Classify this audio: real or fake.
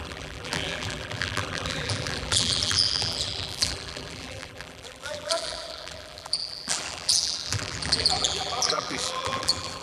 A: fake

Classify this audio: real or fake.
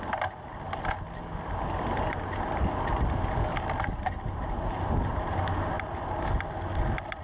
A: real